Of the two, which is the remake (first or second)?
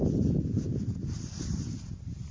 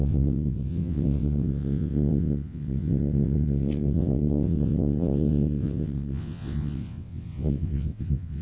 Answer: second